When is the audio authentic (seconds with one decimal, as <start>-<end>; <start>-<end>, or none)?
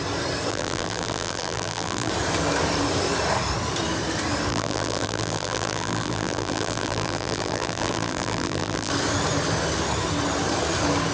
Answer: 0.0-0.5; 2.1-4.5; 8.9-11.1